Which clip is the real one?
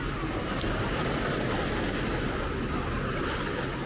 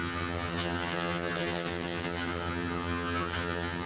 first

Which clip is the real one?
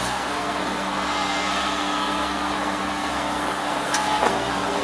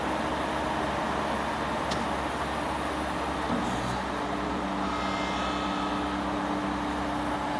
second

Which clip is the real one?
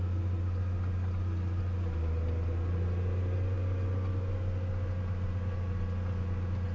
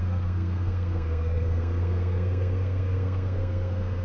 first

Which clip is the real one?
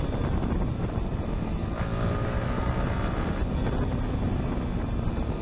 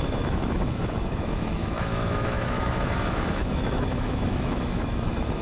first